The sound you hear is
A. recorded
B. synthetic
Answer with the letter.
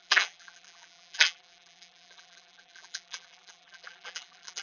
B